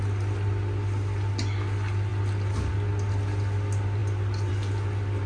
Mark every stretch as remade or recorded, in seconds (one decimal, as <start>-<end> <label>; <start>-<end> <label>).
0.0-5.3 recorded